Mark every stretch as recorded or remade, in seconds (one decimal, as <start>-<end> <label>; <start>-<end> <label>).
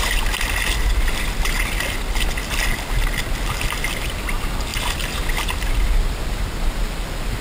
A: 0.0-4.7 recorded; 4.7-5.7 remade; 5.7-7.4 recorded